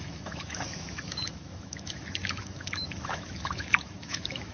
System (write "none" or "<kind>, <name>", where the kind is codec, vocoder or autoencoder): autoencoder, DAC-VAE